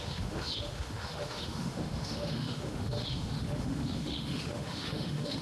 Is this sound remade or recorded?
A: remade